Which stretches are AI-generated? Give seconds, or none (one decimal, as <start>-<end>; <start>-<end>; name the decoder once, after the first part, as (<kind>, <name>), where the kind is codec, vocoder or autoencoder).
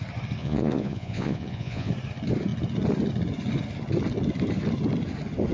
0.4-1.9 (vocoder, Vocos)